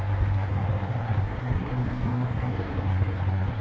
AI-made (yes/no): yes